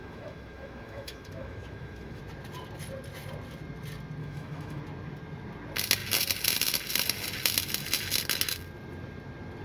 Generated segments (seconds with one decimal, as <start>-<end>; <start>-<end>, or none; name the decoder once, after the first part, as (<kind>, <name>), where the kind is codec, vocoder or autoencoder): 0.0-2.2 (autoencoder, DAC-VAE); 4.2-4.8